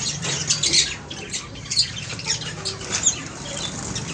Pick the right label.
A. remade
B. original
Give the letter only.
B